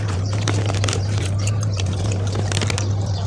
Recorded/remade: remade